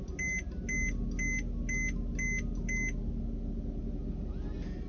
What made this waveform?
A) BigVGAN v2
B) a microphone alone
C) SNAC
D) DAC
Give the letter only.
B